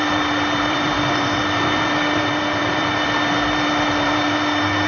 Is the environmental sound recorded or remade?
remade